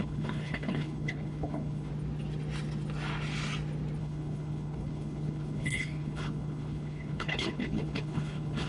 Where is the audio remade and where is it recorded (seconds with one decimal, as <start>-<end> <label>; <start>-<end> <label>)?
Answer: 0.0-1.9 remade; 1.9-4.0 recorded; 4.0-8.7 remade